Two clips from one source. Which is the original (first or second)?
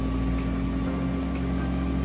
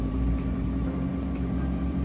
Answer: first